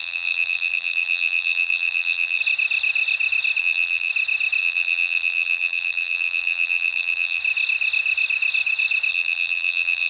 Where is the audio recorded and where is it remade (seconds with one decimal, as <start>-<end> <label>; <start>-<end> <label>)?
0.0-2.4 remade; 2.4-3.6 recorded; 3.6-4.1 remade; 4.1-4.6 recorded; 4.6-7.4 remade; 7.4-9.1 recorded; 9.1-10.1 remade